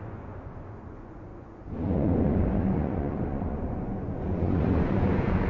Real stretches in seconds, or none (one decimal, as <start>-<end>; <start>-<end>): none